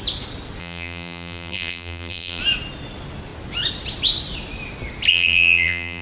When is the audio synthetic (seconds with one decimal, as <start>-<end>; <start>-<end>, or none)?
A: 0.6-2.4; 5.1-6.0